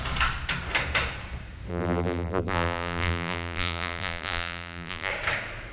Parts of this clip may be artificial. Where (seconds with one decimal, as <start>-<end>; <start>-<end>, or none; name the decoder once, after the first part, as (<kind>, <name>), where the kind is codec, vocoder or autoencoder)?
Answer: 1.7-5.1 (vocoder, BigVGAN v2)